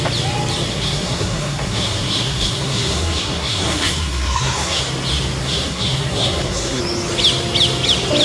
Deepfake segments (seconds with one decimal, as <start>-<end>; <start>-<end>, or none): 0.7-4.8; 5.4-6.8